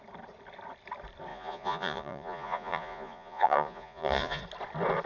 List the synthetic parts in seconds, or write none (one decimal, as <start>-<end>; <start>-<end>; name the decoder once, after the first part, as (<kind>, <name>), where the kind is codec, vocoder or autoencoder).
1.3-4.4 (vocoder, Vocos)